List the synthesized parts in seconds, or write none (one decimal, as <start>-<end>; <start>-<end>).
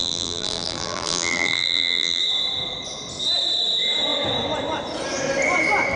0.0-2.2